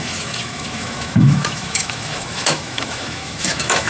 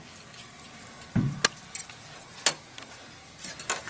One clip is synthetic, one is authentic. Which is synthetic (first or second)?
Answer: first